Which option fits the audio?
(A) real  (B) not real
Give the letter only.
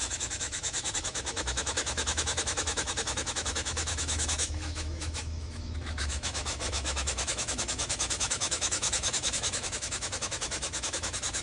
B